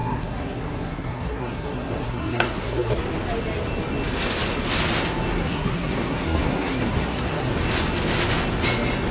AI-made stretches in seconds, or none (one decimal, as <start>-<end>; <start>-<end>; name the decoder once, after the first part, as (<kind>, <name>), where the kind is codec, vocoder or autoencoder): 0.0-3.0 (codec, SNAC); 5.3-7.5